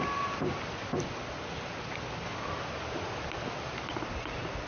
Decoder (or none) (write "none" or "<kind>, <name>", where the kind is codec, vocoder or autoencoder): none